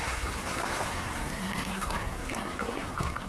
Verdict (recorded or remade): remade